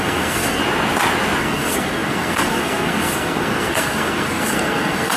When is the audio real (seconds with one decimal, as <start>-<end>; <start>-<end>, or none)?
0.6-1.4